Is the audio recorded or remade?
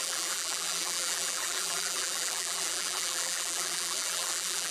remade